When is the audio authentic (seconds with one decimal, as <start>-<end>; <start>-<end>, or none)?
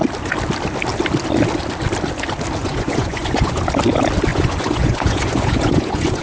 0.0-2.6; 3.6-4.3